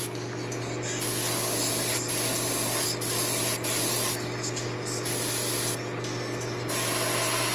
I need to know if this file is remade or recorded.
recorded